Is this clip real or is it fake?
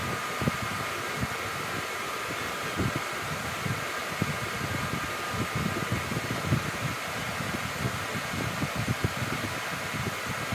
real